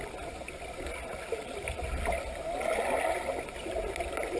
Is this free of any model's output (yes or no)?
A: yes